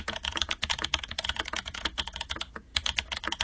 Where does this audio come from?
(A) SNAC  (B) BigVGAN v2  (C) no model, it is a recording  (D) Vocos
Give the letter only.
D